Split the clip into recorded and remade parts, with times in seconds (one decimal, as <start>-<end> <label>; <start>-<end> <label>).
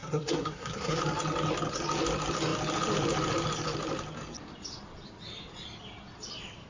0.0-1.0 remade; 1.0-6.7 recorded